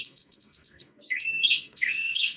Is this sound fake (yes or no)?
yes